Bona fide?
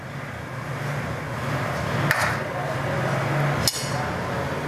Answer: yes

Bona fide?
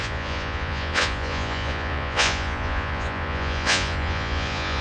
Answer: no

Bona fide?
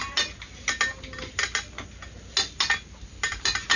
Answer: yes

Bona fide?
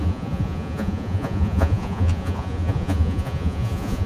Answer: no